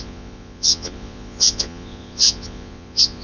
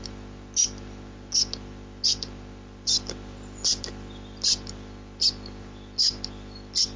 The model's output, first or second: first